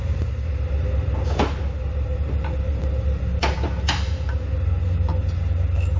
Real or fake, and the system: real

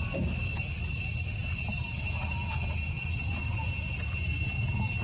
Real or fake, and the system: real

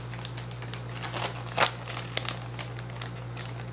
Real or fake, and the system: real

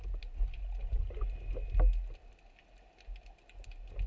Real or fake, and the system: real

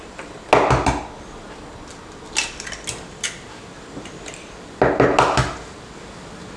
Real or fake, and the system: real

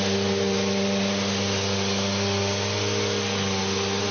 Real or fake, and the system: real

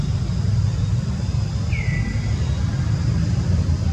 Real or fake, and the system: real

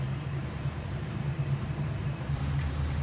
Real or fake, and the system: fake, vocoder, BigVGAN v2